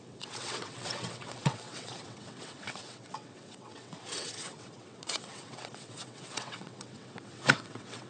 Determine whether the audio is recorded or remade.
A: remade